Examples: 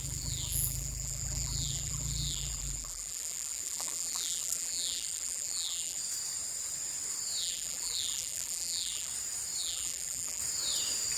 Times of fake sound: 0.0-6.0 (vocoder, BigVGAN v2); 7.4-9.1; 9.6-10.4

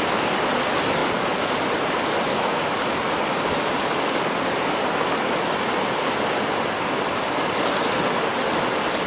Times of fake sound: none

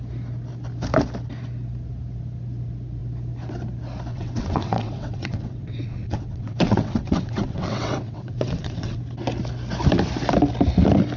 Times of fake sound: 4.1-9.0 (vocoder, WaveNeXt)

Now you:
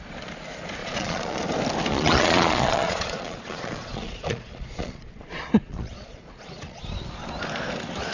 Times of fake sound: 0.8-1.4 (vocoder, Vocos); 1.9-6.8

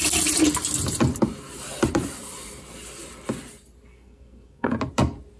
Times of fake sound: 3.9-4.7 (codec, SNAC)

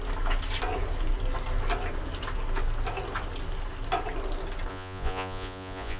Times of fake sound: 4.7-6.0 (vocoder, Vocos)

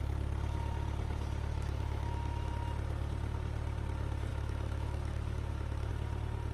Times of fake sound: 1.5-2.5 (autoencoder, DAC-VAE); 4.3-5.9